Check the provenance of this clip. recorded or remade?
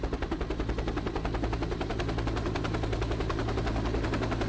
recorded